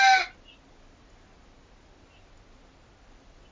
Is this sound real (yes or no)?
yes